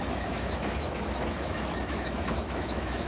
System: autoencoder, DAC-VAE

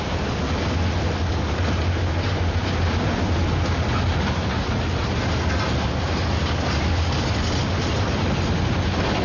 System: none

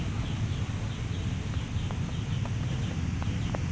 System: none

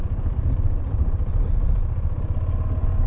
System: none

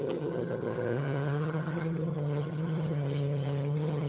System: vocoder, HiFi-GAN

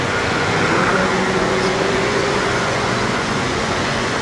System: vocoder, Vocos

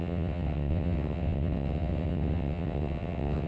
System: vocoder, WaveNeXt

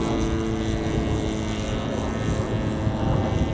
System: none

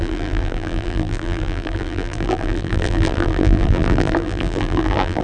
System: vocoder, BigVGAN v2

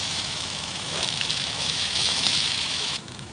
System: autoencoder, DAC-VAE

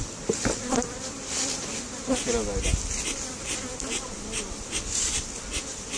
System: none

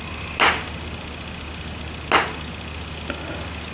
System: none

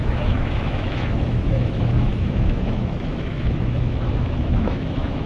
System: autoencoder, DAC-VAE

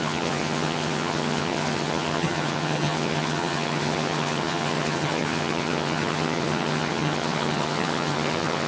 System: vocoder, HiFi-GAN